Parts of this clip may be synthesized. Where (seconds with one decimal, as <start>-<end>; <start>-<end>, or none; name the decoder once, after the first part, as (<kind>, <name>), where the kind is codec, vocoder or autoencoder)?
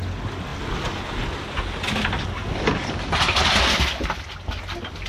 none